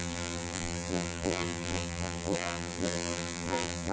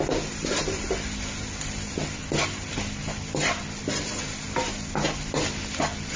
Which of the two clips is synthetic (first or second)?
first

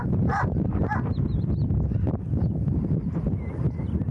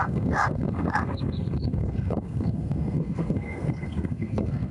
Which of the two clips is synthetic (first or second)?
second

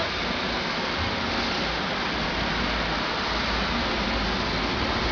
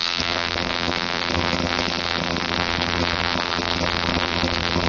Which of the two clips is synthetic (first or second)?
second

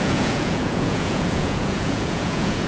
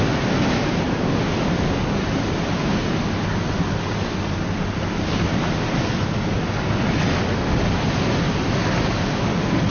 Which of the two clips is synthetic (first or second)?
first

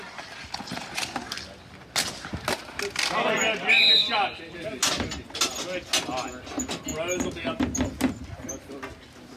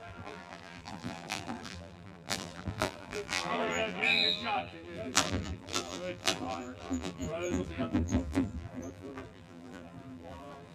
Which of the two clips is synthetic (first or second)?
second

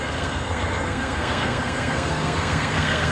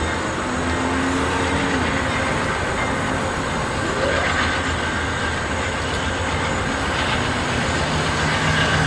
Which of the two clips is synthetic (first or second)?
first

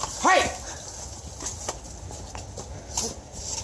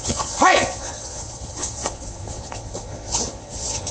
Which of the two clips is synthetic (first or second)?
second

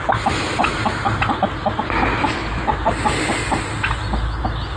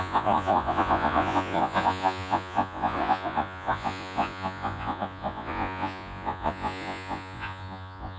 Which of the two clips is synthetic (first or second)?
second